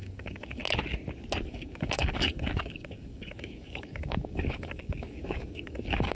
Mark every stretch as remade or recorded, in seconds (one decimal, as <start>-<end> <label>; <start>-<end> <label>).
0.0-0.6 remade; 0.6-1.4 recorded; 1.4-6.1 remade